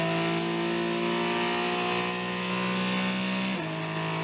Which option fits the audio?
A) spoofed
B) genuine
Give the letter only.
B